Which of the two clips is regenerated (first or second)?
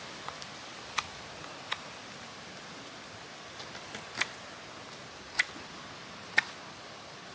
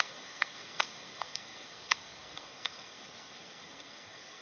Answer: second